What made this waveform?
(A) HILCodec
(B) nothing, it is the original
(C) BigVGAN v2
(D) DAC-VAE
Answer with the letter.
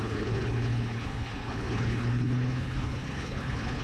A